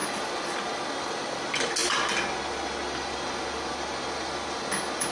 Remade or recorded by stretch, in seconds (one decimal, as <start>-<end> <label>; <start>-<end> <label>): 0.0-5.1 recorded